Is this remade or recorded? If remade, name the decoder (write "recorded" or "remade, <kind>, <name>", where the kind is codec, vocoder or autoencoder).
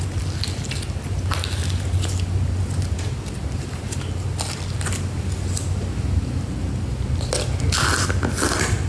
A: recorded